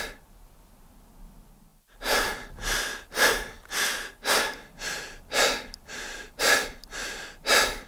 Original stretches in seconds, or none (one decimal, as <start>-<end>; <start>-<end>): 0.0-7.9